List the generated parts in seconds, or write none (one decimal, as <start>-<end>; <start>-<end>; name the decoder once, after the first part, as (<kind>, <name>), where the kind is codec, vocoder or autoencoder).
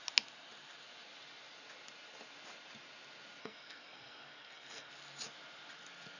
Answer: 3.4-4.9 (codec, SNAC)